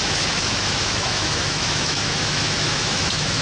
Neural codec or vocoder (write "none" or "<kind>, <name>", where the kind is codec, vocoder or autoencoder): autoencoder, DAC-VAE